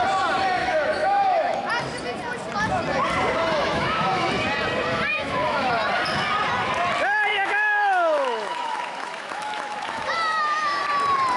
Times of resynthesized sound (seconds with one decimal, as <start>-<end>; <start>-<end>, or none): 0.6-1.7; 3.6-4.3; 5.1-5.7; 7.3-10.8